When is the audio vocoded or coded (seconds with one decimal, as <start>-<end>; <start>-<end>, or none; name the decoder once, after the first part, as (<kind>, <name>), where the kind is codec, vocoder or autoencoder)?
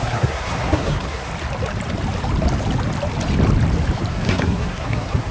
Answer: 0.0-1.3 (codec, SNAC); 4.1-5.3